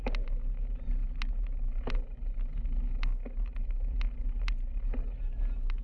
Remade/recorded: recorded